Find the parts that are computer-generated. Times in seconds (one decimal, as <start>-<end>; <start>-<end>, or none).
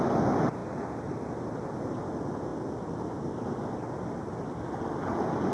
none